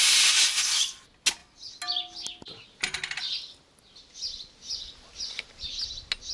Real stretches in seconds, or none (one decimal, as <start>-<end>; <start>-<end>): 0.0-6.3